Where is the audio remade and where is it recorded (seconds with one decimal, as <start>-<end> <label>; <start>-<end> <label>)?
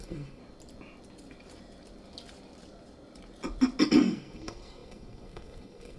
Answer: 0.0-0.4 remade; 0.4-4.0 recorded; 4.0-6.0 remade